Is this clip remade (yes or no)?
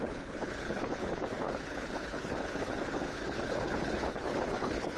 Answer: yes